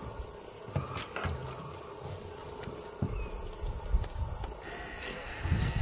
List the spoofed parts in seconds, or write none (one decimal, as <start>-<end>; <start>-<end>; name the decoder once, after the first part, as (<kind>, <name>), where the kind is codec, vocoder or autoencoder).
5.1-5.8 (codec, SNAC)